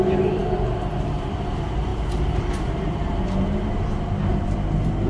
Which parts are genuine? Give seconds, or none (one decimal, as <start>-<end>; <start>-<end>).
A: 0.0-1.9; 3.7-5.1